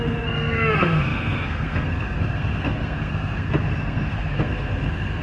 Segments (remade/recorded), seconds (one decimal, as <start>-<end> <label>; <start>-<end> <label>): 0.0-5.2 remade